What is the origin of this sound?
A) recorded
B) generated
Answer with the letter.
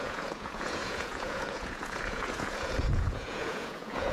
B